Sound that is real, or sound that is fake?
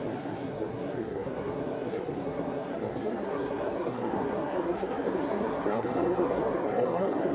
fake